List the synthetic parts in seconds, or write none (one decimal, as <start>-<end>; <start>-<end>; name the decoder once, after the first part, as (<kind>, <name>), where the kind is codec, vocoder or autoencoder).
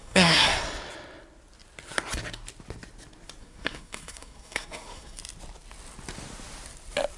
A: 0.0-0.5 (codec, SNAC); 3.4-5.2